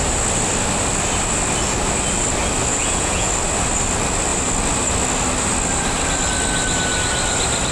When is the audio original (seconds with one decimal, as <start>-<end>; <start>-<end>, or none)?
0.0-2.7; 3.3-7.7